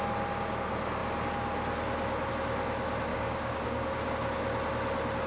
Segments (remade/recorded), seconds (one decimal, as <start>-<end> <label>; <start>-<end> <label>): 0.0-3.1 recorded; 3.1-4.1 remade; 4.1-5.3 recorded